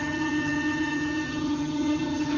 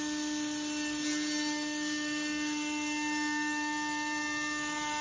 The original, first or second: second